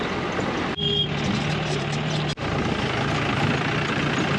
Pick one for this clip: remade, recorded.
recorded